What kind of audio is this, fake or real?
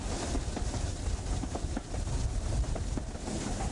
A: real